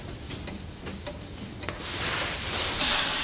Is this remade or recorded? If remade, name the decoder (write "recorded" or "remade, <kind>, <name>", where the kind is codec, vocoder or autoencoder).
recorded